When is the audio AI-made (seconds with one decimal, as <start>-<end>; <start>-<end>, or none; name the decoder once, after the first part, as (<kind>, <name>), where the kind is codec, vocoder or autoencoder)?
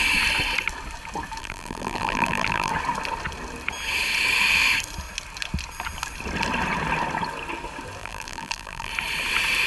1.4-2.7 (vocoder, BigVGAN v2); 8.0-8.9